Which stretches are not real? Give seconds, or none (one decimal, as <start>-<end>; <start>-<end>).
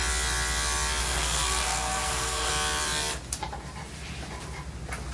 1.0-2.5